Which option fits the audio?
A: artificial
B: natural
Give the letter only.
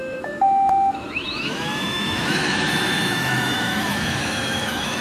A